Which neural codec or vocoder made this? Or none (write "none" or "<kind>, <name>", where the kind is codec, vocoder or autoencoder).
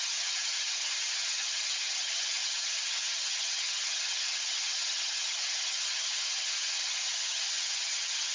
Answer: vocoder, HiFi-GAN